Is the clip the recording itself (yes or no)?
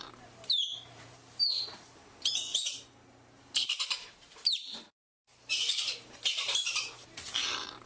no